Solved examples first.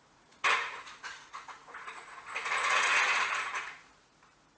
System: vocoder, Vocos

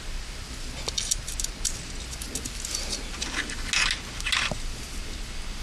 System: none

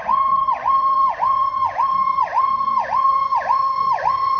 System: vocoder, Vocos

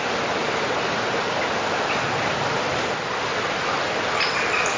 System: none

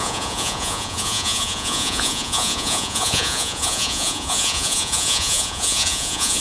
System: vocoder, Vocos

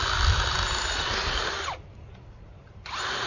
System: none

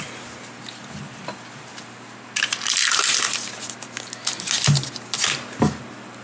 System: none